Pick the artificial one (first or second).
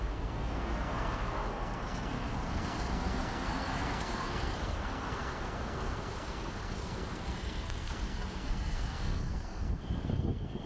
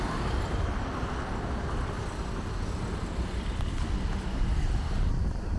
first